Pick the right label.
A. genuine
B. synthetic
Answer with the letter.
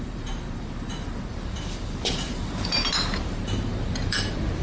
B